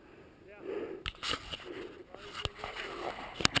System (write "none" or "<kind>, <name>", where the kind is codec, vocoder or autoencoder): none